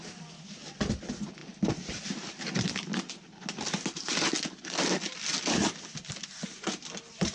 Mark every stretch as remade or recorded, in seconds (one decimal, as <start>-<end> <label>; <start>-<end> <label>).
0.0-7.3 recorded